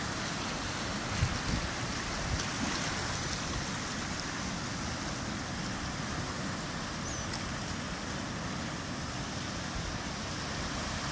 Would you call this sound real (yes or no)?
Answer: yes